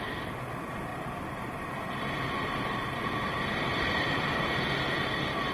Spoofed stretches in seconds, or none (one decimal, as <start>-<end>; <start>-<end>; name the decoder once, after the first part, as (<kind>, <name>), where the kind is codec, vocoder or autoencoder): none